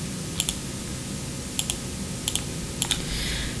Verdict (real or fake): real